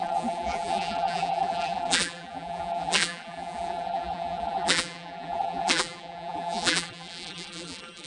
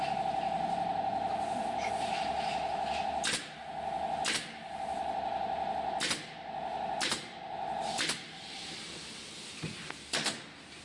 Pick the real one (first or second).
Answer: second